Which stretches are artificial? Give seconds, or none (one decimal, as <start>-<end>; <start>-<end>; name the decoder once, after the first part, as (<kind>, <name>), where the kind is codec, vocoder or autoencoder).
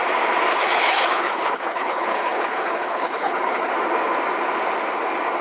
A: 0.5-3.7 (codec, HILCodec)